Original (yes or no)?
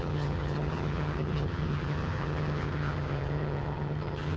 no